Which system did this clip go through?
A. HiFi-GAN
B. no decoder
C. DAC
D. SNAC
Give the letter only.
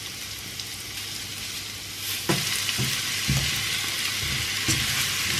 B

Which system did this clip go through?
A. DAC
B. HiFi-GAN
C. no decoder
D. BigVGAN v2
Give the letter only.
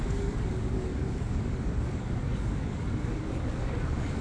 A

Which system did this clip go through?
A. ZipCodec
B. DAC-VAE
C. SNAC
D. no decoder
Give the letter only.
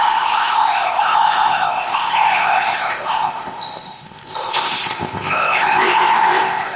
A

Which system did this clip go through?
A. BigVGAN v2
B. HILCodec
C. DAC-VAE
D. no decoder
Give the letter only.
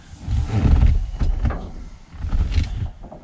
D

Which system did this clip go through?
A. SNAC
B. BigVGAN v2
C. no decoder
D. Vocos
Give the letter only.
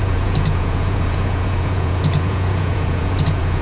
D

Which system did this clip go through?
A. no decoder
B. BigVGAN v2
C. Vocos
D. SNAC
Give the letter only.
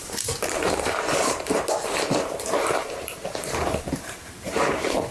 B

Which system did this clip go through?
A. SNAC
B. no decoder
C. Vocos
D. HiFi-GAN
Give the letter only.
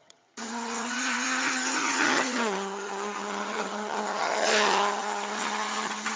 D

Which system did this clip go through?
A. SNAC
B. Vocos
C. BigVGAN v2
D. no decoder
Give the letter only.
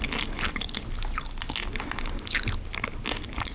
D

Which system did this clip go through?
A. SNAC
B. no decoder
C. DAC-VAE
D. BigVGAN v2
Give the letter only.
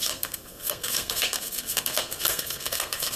A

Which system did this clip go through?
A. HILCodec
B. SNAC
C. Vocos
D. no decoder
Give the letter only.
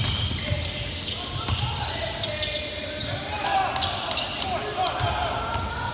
D